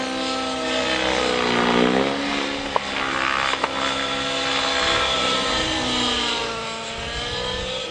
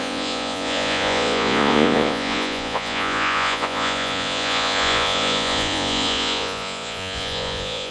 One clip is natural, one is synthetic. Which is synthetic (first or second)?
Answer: second